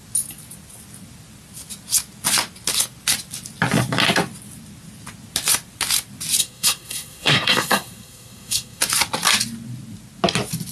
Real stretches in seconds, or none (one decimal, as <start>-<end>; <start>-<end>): 0.0-6.4; 8.8-10.7